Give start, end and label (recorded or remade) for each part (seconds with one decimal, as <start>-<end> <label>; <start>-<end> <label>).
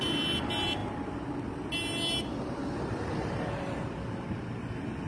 0.0-5.1 recorded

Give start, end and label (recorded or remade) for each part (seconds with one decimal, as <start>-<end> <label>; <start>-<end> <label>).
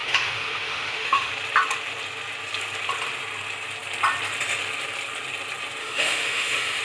0.0-1.3 remade; 1.3-5.8 recorded; 5.8-6.8 remade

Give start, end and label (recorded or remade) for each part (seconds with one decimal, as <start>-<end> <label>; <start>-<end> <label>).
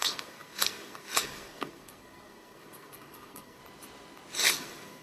0.0-3.6 remade; 3.6-4.5 recorded; 4.5-5.0 remade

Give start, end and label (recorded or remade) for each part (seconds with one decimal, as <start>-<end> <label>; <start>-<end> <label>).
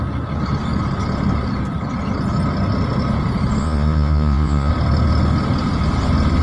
0.0-3.6 recorded; 3.6-4.7 remade; 4.7-6.4 recorded